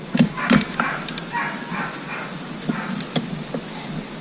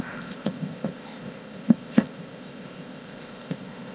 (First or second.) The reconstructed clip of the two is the second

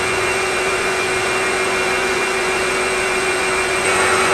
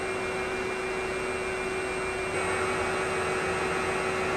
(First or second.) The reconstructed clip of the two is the first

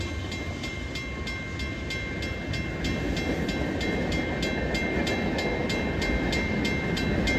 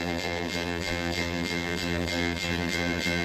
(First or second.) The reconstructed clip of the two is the second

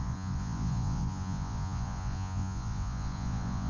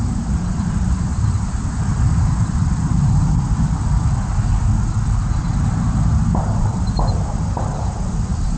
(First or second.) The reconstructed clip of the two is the first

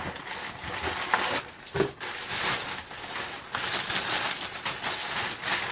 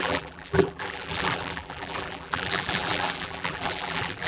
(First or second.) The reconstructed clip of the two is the second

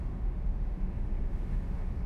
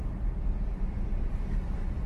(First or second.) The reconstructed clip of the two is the first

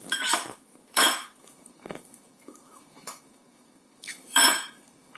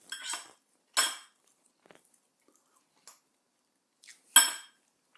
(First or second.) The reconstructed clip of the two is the first